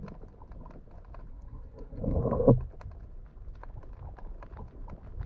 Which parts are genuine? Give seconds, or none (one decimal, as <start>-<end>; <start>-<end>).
0.0-1.3; 2.2-5.3